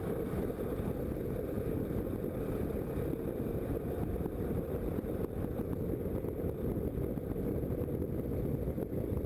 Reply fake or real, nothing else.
real